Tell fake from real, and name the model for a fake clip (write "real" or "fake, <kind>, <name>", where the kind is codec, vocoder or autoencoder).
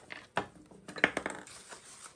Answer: real